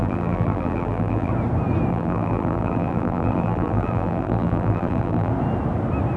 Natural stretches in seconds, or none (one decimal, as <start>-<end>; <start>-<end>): 1.3-1.9; 5.3-6.2